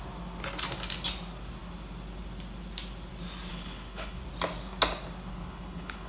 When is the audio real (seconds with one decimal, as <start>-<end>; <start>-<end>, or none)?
0.0-3.5; 4.2-5.3